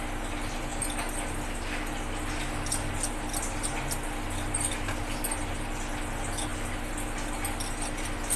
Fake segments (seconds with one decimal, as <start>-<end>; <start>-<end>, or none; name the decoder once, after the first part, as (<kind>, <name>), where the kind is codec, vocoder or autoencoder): none